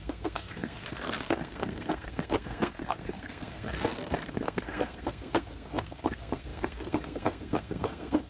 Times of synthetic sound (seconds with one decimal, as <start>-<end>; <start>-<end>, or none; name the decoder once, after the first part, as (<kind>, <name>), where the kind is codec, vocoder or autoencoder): 0.0-8.3 (codec, SNAC)